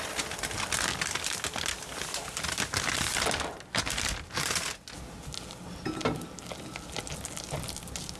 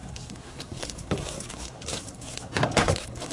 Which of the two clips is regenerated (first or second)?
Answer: second